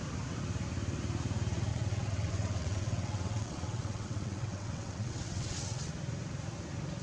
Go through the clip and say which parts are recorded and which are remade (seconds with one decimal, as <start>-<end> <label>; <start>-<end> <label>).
0.0-1.7 recorded; 1.7-5.9 remade; 5.9-7.0 recorded